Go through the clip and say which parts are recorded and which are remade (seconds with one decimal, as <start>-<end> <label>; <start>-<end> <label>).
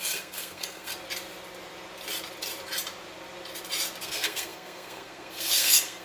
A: 0.0-0.9 remade; 0.9-4.0 recorded; 4.0-6.0 remade